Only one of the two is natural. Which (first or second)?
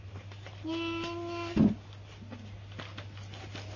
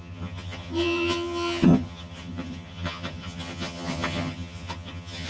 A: first